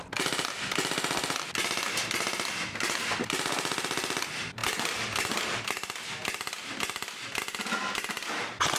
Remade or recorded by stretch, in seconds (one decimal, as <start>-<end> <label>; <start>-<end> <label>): 0.0-8.8 recorded